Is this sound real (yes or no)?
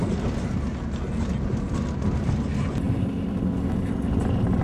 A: yes